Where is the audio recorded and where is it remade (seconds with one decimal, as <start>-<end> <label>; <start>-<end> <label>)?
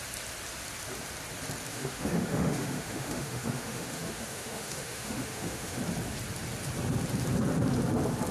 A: 0.0-1.7 recorded; 1.7-5.8 remade; 5.8-8.3 recorded